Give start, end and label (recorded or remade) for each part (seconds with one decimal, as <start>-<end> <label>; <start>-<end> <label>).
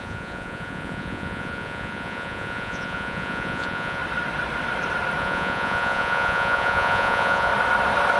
0.0-4.0 remade; 4.0-5.2 recorded; 5.2-7.5 remade; 7.5-8.2 recorded